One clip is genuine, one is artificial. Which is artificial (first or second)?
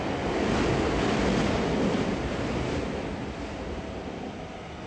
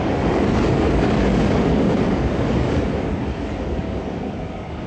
second